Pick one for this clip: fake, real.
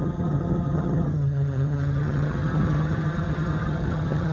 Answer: fake